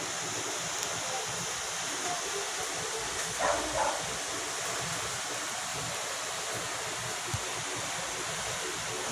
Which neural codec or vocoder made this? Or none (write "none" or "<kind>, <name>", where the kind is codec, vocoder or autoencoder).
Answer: none